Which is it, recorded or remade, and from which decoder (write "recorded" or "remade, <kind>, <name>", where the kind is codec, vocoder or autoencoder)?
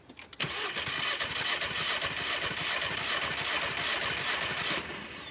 recorded